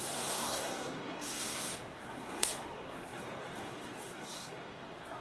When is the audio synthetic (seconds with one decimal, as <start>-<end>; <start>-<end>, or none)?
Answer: 0.0-5.2

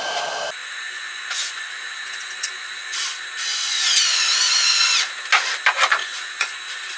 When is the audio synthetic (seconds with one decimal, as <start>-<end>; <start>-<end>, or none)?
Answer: 0.6-3.0; 3.5-4.9; 6.0-6.6

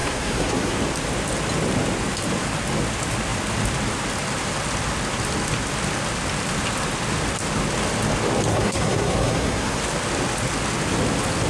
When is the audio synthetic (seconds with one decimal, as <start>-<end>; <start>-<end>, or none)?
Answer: 0.0-0.8; 8.5-9.8

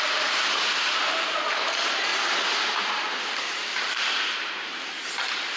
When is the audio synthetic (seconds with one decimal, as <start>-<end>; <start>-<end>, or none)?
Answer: 2.1-5.1

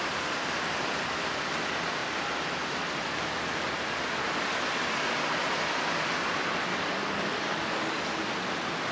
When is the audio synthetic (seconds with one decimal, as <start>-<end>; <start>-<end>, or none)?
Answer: 6.7-8.2

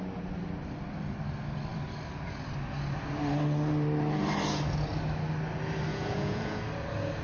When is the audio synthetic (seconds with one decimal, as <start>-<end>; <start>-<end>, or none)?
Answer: 5.9-6.6

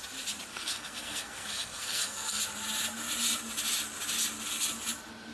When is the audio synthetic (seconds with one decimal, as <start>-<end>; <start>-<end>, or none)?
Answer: 0.5-2.4

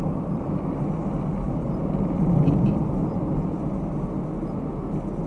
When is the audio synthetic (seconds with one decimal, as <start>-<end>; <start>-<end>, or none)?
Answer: none